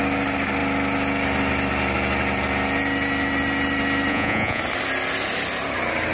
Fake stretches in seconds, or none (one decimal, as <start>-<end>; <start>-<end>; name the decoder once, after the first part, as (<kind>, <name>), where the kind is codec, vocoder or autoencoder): 4.1-4.6 (vocoder, Vocos)